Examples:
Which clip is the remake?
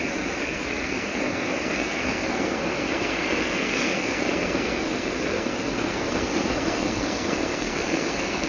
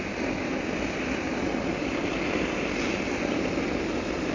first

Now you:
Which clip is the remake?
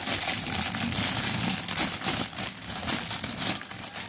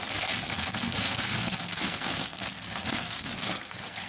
second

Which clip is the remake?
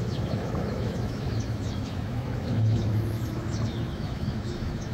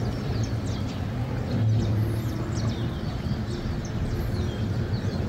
first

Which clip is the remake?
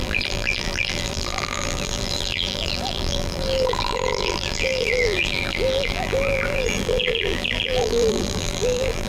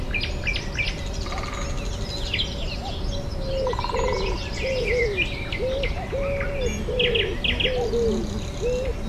first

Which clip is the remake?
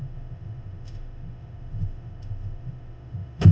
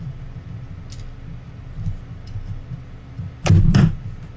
first